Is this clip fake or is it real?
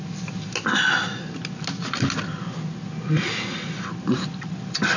real